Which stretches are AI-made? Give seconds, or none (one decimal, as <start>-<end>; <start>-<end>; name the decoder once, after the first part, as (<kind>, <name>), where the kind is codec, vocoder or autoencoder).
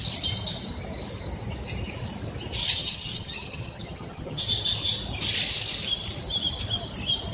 2.6-4.4 (vocoder, HiFi-GAN)